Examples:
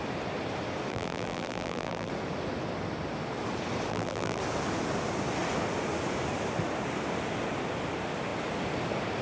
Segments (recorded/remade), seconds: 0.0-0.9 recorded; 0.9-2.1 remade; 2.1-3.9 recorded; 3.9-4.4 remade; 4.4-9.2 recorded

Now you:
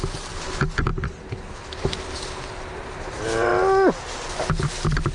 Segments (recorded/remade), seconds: 0.0-5.1 recorded

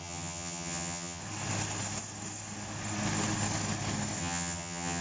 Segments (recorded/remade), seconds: 0.0-1.2 remade; 1.2-4.2 recorded; 4.2-5.0 remade

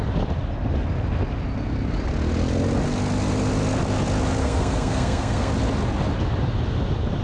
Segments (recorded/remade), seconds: 0.0-4.4 recorded; 4.4-5.5 remade; 5.5-7.2 recorded

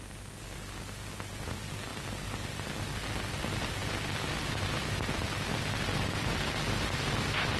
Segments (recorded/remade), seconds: 0.0-7.6 recorded

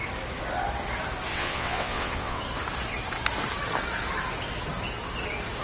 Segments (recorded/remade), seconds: 0.0-1.3 recorded; 1.3-2.4 remade; 2.4-5.6 recorded

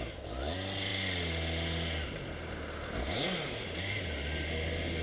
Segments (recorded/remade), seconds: 0.0-5.0 recorded